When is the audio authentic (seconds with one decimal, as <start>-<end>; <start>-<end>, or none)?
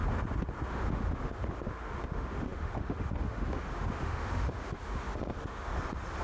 0.0-0.7; 5.7-6.2